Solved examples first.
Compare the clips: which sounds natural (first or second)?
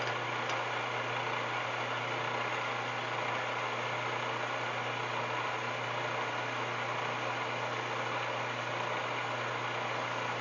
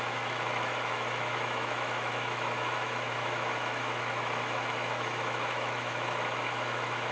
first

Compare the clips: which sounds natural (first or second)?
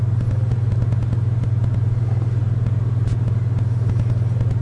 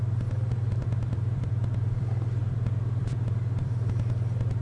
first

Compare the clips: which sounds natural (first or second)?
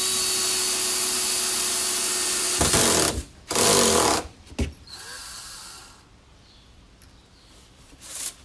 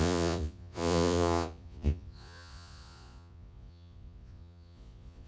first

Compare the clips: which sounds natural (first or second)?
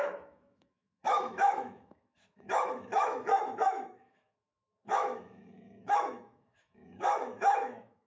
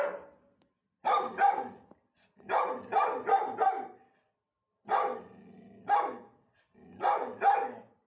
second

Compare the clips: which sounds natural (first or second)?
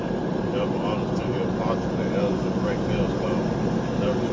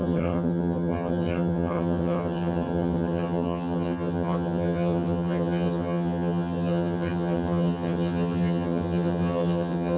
first